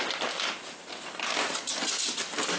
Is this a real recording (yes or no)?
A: yes